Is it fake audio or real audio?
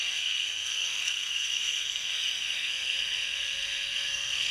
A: fake